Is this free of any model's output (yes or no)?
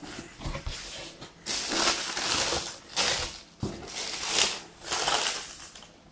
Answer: yes